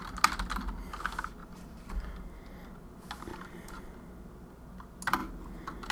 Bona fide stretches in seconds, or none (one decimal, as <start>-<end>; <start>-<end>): 0.0-1.4; 2.0-3.3; 3.9-5.9